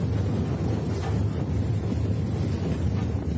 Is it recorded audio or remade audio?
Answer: recorded